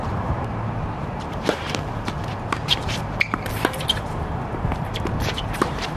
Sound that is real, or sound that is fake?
fake